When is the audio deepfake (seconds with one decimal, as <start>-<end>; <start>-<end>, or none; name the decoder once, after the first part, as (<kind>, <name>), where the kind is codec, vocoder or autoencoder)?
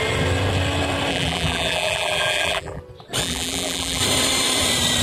1.1-2.8 (vocoder, BigVGAN v2); 3.2-4.0